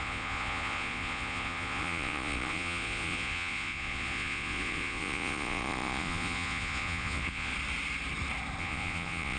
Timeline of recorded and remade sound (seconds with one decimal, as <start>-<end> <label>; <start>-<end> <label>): 0.0-7.5 remade; 7.5-8.6 recorded; 8.6-9.4 remade